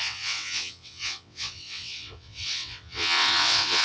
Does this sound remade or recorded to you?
remade